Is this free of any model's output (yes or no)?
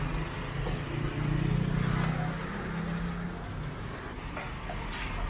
yes